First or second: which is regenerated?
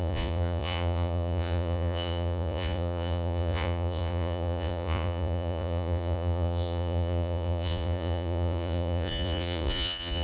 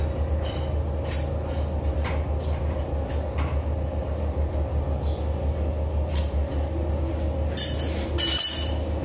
first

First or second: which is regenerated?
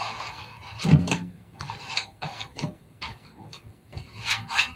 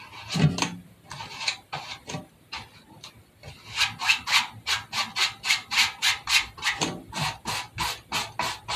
first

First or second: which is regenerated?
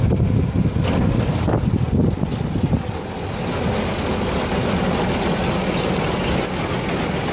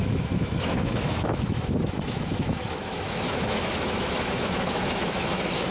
second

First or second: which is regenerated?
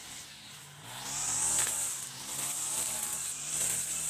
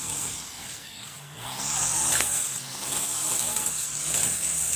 second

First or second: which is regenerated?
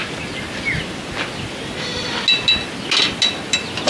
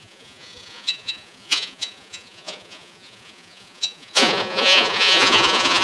second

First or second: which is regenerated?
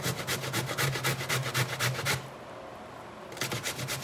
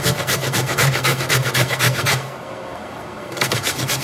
second